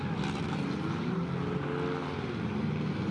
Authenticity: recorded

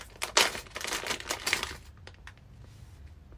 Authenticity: recorded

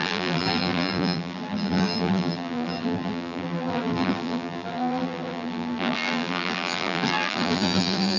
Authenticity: remade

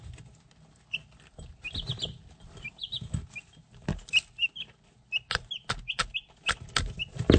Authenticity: recorded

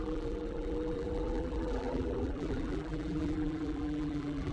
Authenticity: remade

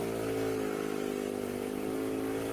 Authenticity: recorded